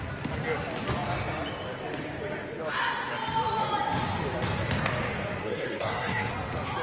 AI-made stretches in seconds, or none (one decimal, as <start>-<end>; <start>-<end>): 5.4-6.3